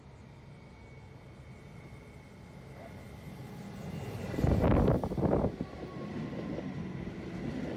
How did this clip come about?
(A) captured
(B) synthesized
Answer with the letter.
A